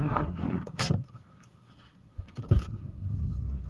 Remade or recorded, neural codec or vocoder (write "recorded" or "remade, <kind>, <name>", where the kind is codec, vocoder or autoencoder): remade, codec, SNAC